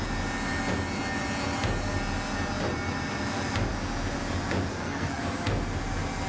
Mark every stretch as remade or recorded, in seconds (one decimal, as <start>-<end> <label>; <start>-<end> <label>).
0.0-4.7 recorded; 4.7-5.2 remade; 5.2-6.3 recorded